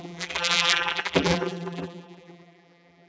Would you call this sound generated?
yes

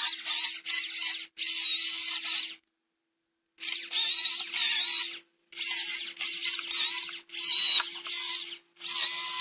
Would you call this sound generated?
no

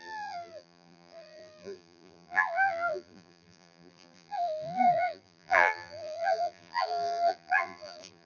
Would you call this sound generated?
yes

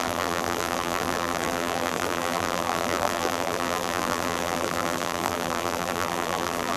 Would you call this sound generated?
yes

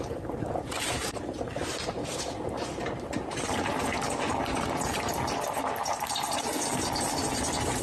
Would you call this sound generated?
yes